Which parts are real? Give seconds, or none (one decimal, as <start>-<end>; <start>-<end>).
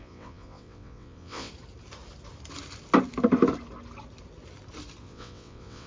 1.5-5.0